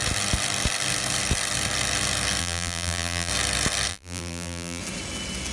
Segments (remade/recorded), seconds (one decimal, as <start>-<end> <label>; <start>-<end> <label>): 0.0-2.4 recorded; 2.4-3.3 remade; 3.3-3.9 recorded; 3.9-4.8 remade; 4.8-5.5 recorded